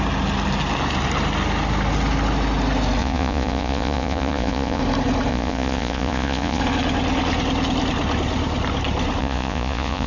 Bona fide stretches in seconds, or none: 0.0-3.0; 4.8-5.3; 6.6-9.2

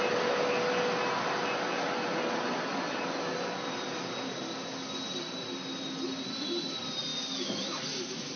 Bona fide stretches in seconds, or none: 0.0-8.4

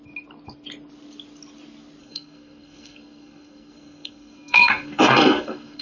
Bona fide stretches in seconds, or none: 0.0-2.0

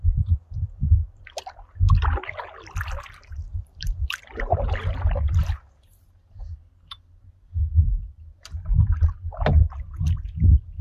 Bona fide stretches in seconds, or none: 0.0-3.5; 5.0-10.8

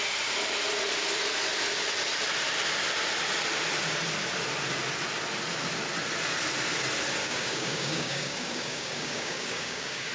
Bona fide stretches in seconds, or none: 0.0-7.2

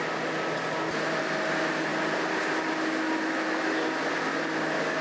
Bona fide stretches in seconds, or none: 0.0-5.0